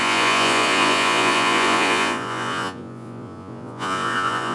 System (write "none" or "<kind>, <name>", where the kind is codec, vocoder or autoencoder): vocoder, Vocos